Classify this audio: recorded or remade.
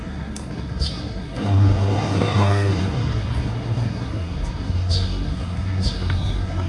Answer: remade